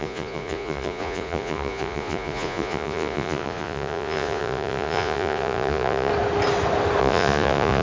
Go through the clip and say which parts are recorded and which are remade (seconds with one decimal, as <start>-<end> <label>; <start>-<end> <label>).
0.0-6.1 remade; 6.1-7.0 recorded; 7.0-7.8 remade